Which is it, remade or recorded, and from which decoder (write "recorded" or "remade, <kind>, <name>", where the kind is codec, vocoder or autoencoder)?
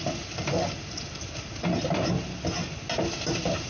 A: recorded